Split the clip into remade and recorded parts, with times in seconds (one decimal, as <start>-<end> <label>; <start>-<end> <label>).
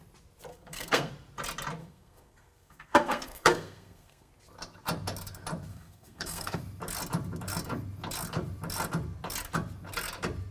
0.0-0.5 recorded; 0.5-1.1 remade; 1.1-1.8 recorded; 1.8-4.3 remade; 4.3-5.7 recorded; 5.7-6.6 remade; 6.6-10.5 recorded